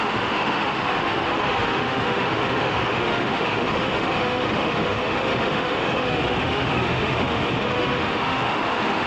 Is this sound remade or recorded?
remade